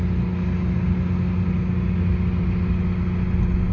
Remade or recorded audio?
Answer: recorded